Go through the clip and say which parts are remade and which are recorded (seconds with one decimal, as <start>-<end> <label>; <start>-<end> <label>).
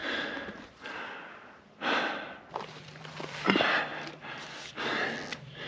0.0-2.5 recorded; 2.5-3.9 remade; 3.9-5.7 recorded